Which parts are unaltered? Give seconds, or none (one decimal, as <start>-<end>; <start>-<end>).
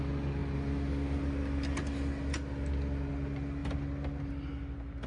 0.0-5.1